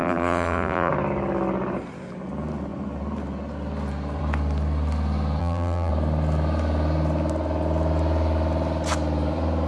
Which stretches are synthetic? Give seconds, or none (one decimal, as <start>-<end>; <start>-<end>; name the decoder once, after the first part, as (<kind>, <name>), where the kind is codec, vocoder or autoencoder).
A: 0.0-0.9 (vocoder, BigVGAN v2); 5.4-5.9